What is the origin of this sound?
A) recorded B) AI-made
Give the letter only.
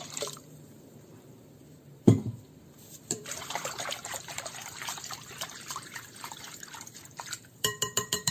B